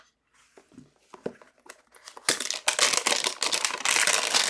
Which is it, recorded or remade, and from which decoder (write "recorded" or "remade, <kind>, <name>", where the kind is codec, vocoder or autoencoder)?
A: recorded